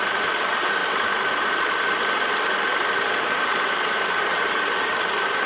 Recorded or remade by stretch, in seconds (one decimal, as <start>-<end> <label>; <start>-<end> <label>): 0.0-0.8 recorded; 0.8-1.7 remade; 1.7-2.7 recorded; 2.7-4.4 remade; 4.4-5.5 recorded